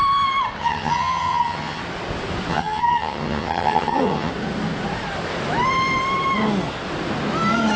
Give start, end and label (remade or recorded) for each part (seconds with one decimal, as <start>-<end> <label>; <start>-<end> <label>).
0.0-0.6 recorded; 0.6-1.8 remade; 1.8-2.5 recorded; 2.5-4.3 remade; 4.3-7.8 recorded